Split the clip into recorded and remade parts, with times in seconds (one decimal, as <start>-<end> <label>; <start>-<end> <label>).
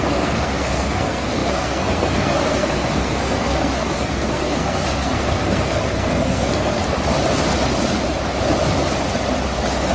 0.0-6.8 remade; 6.8-9.9 recorded